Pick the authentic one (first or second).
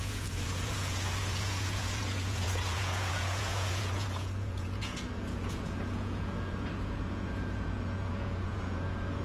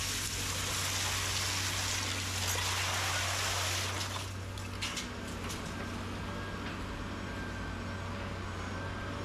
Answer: second